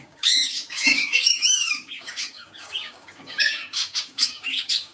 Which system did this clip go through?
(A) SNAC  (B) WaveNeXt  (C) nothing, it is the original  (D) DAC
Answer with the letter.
D